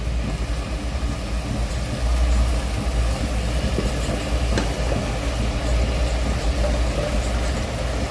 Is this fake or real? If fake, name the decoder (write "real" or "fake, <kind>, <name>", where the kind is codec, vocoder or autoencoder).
real